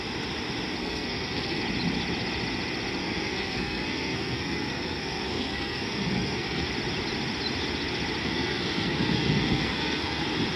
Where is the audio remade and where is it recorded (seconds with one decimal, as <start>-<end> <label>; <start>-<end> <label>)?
0.0-0.8 recorded; 0.8-1.6 remade; 1.6-3.0 recorded; 3.0-6.7 remade; 6.7-8.2 recorded; 8.2-10.2 remade; 10.2-10.6 recorded